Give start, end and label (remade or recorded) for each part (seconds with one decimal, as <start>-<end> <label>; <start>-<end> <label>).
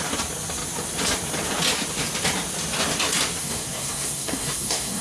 0.0-3.4 recorded; 3.4-5.0 remade